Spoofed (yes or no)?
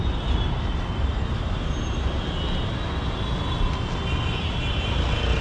no